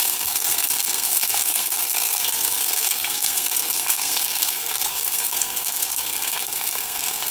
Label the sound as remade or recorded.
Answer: remade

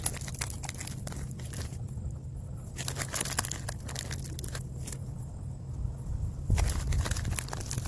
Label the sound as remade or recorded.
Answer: recorded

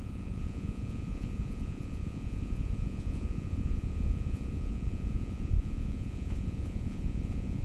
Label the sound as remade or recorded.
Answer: remade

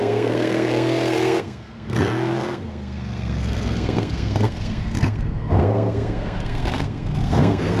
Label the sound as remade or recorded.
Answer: remade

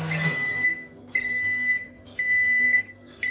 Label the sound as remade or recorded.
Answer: remade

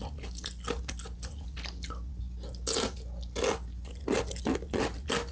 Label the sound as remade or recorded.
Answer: recorded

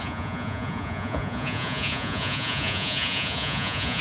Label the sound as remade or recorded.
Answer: remade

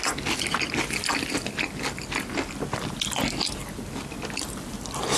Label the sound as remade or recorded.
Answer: recorded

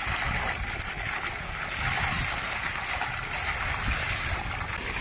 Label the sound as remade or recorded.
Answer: recorded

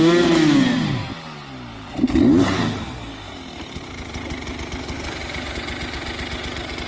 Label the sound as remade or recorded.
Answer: recorded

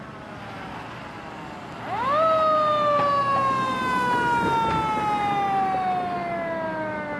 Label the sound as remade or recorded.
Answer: recorded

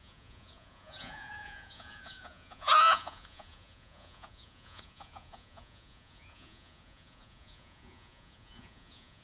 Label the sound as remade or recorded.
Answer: remade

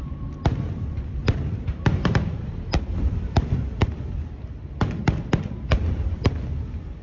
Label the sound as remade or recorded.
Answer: remade